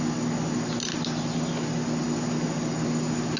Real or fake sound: real